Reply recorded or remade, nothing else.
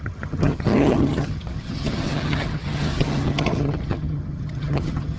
remade